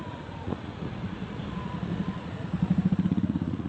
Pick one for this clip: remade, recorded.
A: remade